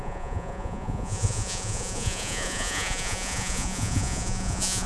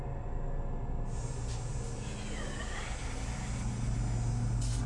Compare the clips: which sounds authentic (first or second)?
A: second